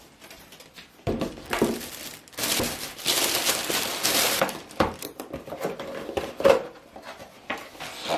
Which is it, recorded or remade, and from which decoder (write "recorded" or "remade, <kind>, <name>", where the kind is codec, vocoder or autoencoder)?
remade, vocoder, BigVGAN v2